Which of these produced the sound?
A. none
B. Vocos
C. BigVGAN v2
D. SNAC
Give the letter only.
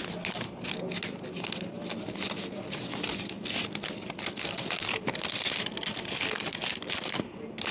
A